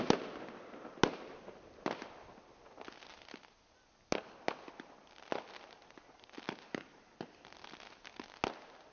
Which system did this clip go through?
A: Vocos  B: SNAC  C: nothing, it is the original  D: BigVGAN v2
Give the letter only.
C